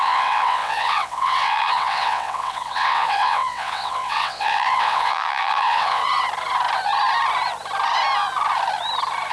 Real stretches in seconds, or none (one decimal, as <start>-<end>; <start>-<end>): 6.0-9.3